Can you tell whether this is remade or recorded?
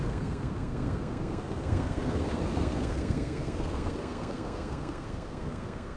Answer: remade